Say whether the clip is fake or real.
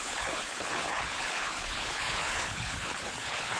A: fake